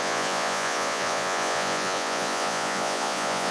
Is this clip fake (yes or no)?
yes